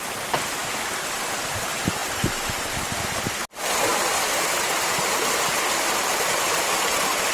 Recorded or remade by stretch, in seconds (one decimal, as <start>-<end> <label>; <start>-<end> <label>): 0.0-7.3 recorded